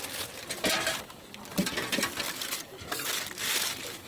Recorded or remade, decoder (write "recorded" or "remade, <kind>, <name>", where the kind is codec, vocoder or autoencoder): recorded